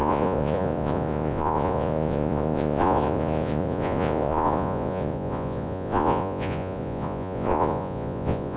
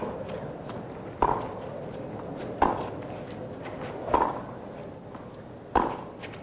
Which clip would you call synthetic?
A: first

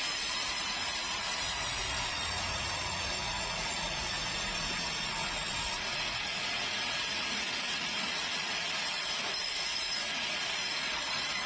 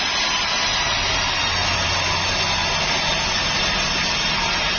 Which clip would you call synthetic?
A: first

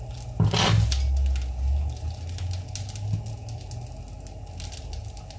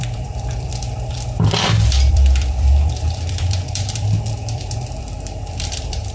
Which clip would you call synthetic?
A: second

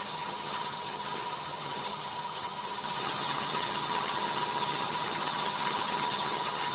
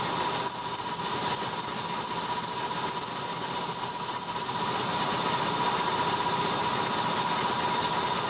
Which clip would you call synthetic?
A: first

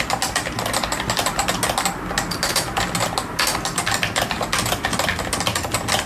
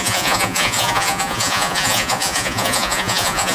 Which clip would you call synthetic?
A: second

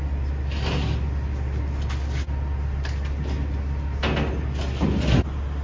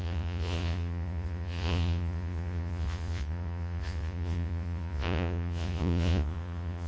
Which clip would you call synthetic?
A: second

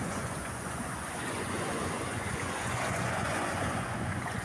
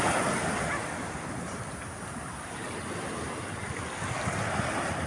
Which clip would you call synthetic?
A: first